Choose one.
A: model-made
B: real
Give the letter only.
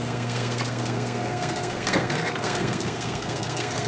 A